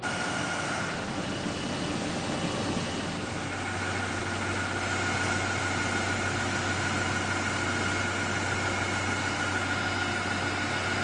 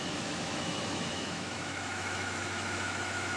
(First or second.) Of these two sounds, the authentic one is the first